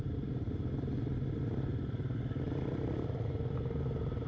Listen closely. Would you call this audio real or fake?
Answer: real